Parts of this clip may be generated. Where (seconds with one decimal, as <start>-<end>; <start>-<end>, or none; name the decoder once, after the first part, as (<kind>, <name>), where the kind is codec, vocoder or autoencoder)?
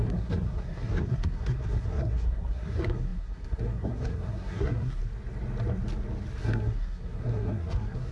0.0-5.0 (codec, SNAC); 6.4-8.1